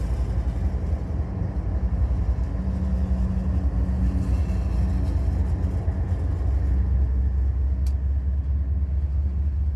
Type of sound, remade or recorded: recorded